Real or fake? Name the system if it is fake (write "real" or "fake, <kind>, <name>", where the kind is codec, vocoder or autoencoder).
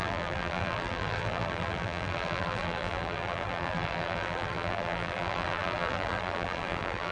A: fake, vocoder, BigVGAN v2